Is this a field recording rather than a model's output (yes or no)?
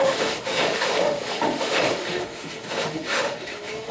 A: no